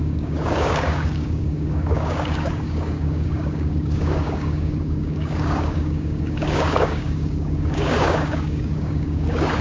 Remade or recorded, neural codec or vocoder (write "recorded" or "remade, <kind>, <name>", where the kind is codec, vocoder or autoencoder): remade, codec, DAC